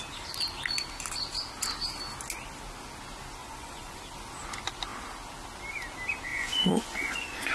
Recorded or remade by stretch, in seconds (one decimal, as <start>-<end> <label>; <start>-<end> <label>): 0.0-3.4 recorded; 3.4-4.0 remade; 4.0-6.3 recorded; 6.3-7.5 remade